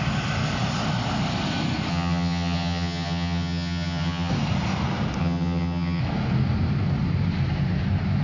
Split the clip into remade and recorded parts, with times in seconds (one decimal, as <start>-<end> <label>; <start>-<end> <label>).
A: 0.0-1.9 recorded; 1.9-4.3 remade; 4.3-5.2 recorded; 5.2-6.0 remade; 6.0-8.2 recorded